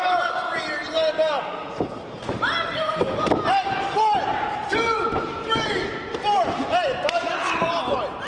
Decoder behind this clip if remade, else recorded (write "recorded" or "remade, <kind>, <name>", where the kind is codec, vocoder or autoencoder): remade, vocoder, BigVGAN v2